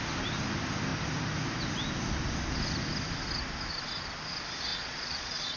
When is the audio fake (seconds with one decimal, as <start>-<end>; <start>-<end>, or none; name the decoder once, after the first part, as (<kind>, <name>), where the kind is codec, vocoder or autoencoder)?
4.7-5.6 (vocoder, Vocos)